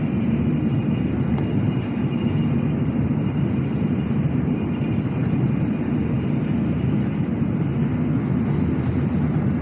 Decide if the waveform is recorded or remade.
recorded